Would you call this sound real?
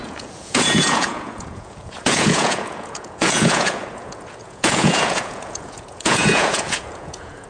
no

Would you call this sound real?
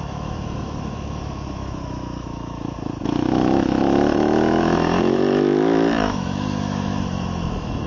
no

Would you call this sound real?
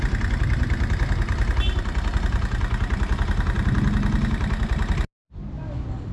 yes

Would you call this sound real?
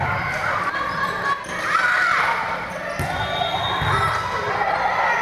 yes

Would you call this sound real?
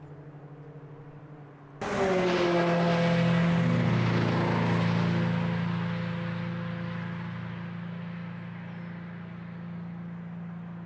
yes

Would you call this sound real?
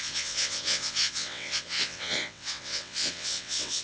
no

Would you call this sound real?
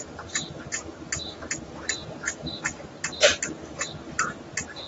yes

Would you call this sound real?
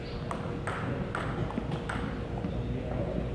yes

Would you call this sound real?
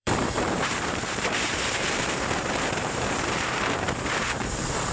no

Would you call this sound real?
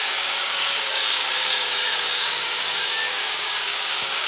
no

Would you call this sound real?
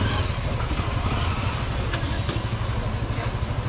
yes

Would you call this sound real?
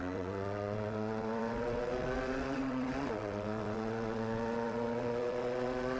no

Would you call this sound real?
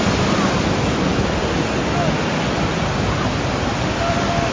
yes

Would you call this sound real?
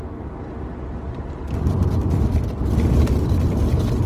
yes